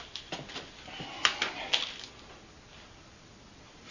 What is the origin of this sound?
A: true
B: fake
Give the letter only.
A